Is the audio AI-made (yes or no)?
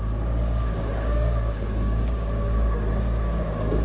yes